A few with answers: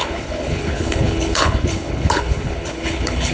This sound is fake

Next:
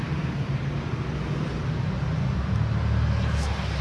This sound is real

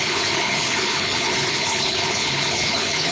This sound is fake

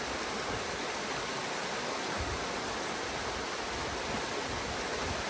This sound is real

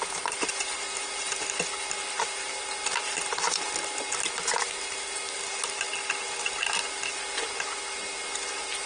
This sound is real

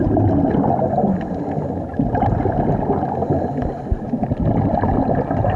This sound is real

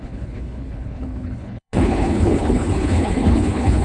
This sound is fake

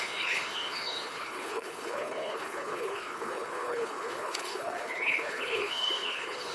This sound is fake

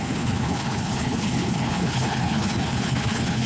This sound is fake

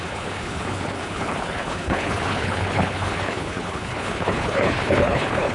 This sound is fake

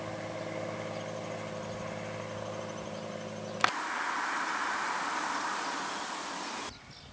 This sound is real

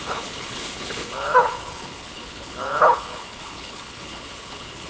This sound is fake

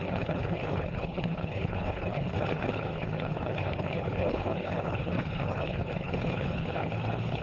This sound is fake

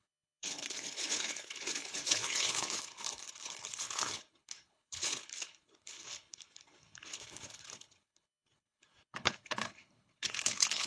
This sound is fake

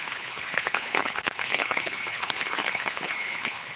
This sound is fake